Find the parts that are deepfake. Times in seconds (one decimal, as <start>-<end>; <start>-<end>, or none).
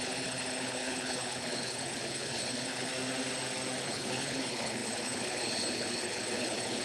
0.0-2.9; 3.8-6.8